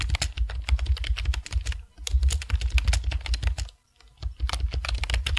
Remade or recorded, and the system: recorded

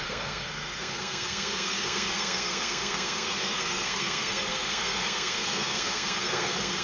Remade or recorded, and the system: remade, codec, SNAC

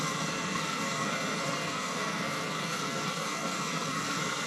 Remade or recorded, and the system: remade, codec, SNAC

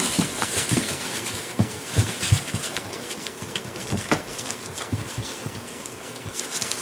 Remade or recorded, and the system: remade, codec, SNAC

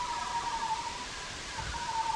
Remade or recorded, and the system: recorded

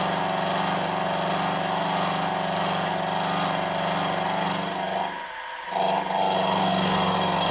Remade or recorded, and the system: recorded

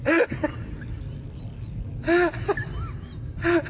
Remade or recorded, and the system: recorded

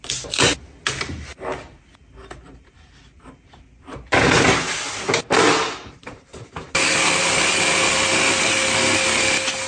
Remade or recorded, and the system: recorded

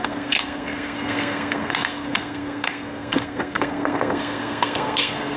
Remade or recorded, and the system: remade, codec, SNAC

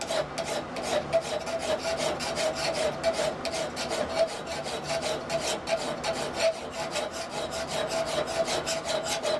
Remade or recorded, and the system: recorded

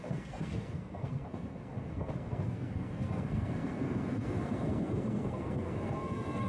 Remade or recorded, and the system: remade, codec, SNAC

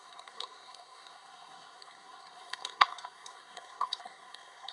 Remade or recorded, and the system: remade, codec, SNAC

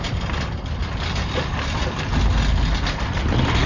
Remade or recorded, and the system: recorded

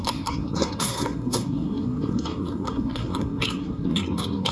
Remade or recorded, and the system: remade, codec, SNAC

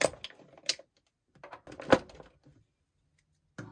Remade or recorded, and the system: recorded